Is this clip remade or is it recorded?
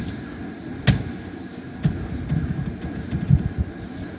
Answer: recorded